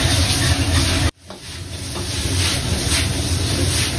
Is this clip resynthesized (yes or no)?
no